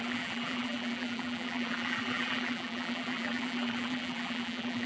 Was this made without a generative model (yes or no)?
no